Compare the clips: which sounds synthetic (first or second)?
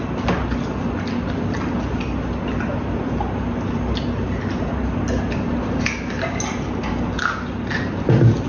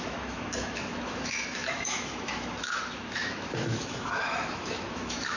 second